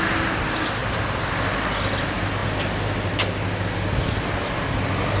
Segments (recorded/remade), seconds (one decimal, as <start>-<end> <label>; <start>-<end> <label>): 0.0-0.8 recorded; 0.8-1.4 remade; 1.4-5.2 recorded